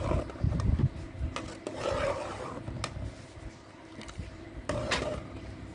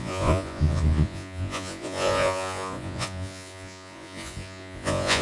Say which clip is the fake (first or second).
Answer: second